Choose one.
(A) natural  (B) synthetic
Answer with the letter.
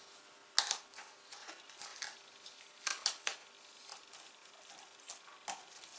A